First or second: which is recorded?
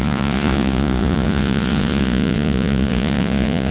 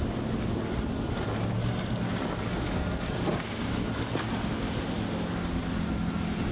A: second